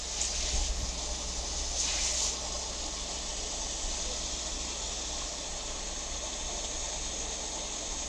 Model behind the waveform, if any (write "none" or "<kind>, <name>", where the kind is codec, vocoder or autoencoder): none